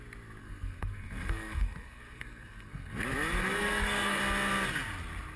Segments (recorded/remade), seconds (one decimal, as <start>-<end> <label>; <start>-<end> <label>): 0.0-0.4 recorded; 0.4-3.0 remade; 3.0-3.4 recorded; 3.4-4.2 remade; 4.2-5.4 recorded